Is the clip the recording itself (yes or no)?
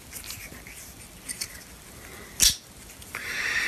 yes